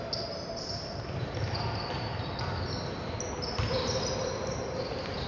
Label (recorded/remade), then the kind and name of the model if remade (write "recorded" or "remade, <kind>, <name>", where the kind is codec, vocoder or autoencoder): recorded